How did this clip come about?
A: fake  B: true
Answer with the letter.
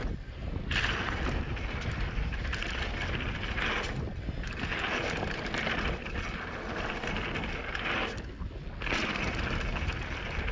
B